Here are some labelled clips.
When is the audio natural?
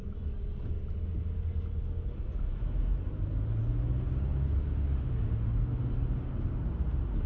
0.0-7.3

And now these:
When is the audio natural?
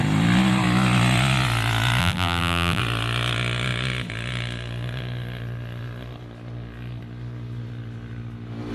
0.0-2.0; 2.8-8.7